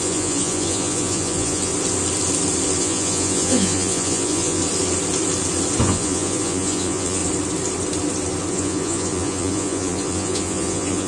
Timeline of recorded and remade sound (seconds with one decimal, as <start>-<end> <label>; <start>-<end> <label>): 0.0-1.7 remade; 1.7-2.8 recorded; 2.8-4.6 remade; 4.6-5.8 recorded; 5.8-7.2 remade; 7.2-8.5 recorded; 8.5-11.1 remade

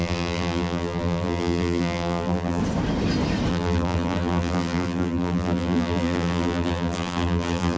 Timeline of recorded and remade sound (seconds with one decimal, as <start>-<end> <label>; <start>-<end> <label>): 0.0-2.6 remade; 2.6-3.5 recorded; 3.5-7.8 remade

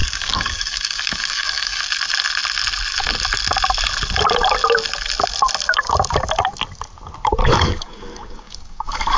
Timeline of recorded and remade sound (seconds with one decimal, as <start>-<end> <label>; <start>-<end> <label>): 0.0-1.8 remade; 1.8-7.4 recorded; 7.4-9.2 remade